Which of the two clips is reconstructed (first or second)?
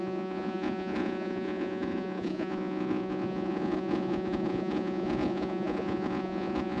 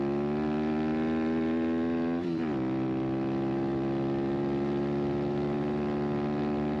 first